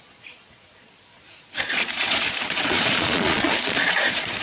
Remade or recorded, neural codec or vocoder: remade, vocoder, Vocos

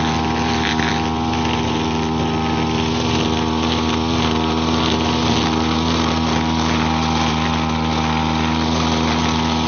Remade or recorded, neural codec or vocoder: recorded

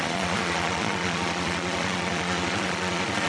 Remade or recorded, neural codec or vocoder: remade, vocoder, Vocos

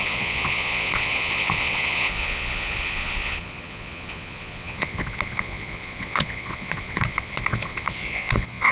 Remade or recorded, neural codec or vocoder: remade, vocoder, Vocos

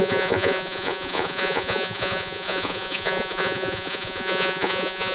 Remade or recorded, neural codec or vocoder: remade, vocoder, Vocos